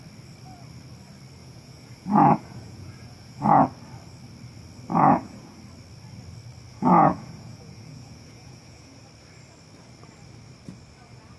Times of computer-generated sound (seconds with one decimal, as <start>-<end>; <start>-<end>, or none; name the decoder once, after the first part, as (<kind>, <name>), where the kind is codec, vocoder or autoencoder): 1.4-3.6 (vocoder, Vocos); 4.9-5.6; 6.7-9.0